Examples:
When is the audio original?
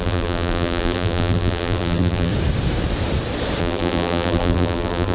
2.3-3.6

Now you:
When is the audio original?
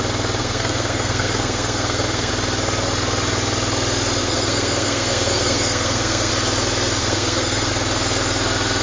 0.0-0.4; 2.3-4.2; 6.3-7.0; 7.7-8.8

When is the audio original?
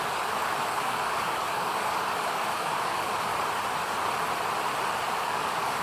3.3-5.2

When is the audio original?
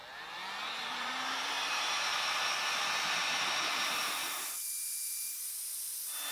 0.0-0.7; 2.1-3.1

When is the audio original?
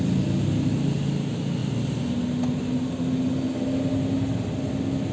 0.0-5.1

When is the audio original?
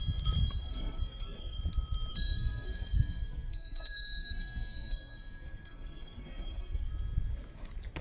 0.0-0.6; 1.6-2.1; 6.9-8.0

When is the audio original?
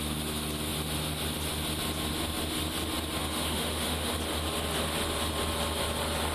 0.0-3.2; 4.1-6.3